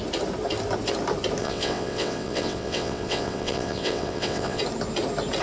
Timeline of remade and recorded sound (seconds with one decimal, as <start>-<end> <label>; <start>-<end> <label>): 0.0-1.4 recorded; 1.4-4.6 remade; 4.6-5.4 recorded